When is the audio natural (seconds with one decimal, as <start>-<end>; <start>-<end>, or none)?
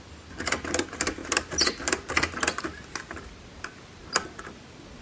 0.0-5.0